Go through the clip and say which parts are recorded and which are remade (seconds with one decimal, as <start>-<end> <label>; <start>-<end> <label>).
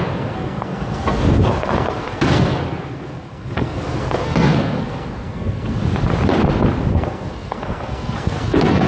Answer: 0.0-5.8 remade; 5.8-6.9 recorded; 6.9-8.9 remade